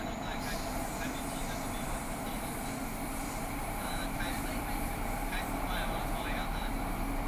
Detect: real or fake fake